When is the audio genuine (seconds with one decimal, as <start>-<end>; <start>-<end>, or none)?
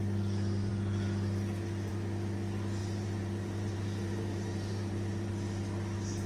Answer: 0.0-2.8; 5.3-6.3